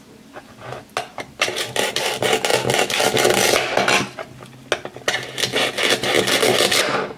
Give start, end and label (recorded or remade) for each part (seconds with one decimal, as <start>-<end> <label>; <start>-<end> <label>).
0.0-1.1 recorded; 1.1-1.9 remade; 1.9-7.2 recorded